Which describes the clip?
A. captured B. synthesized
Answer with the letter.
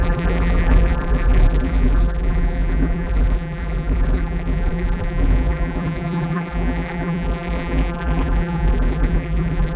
B